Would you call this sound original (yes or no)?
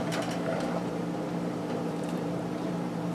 no